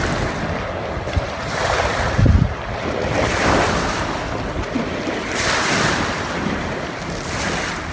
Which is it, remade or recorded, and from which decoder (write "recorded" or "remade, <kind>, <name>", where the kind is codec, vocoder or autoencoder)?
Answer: recorded